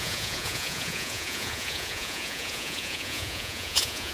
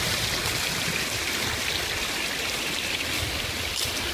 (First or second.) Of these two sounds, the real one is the second